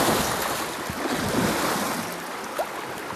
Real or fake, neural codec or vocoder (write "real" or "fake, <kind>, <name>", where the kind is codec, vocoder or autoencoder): real